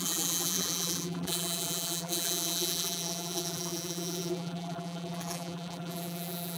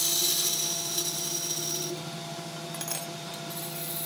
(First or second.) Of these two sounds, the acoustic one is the second